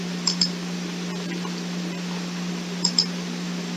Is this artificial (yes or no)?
no